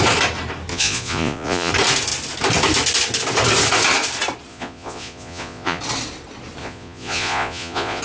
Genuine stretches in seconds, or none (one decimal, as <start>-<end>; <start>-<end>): 0.0-0.7; 1.7-4.5; 5.8-6.6